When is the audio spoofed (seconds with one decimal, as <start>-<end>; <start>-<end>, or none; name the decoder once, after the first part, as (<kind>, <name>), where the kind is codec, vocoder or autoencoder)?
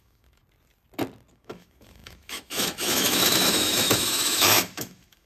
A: 0.0-0.4 (autoencoder, DAC-VAE); 1.3-5.3